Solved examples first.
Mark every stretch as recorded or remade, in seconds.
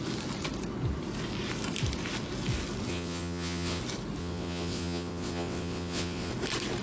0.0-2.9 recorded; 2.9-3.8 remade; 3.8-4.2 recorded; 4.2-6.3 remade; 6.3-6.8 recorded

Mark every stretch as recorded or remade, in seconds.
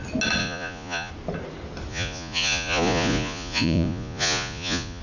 0.0-0.4 recorded; 0.4-1.1 remade; 1.1-1.9 recorded; 1.9-5.0 remade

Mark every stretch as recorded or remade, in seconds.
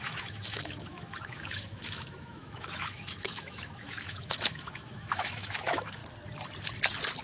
0.0-6.0 remade; 6.0-7.2 recorded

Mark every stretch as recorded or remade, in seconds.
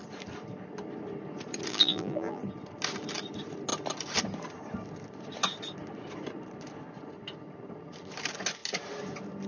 0.0-1.7 recorded; 1.7-2.4 remade; 2.4-9.5 recorded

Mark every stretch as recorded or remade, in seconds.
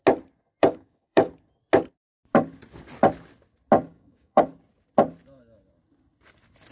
0.0-0.6 recorded; 0.6-1.3 remade; 1.3-3.9 recorded; 3.9-4.4 remade; 4.4-6.7 recorded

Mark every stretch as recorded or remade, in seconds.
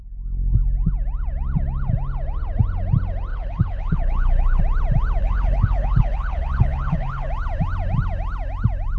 0.0-3.3 recorded; 3.3-4.6 remade; 4.6-5.2 recorded; 5.2-7.3 remade; 7.3-9.0 recorded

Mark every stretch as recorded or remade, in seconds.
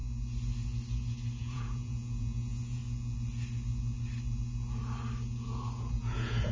0.0-1.4 recorded; 1.4-2.8 remade; 2.8-5.9 recorded; 5.9-6.5 remade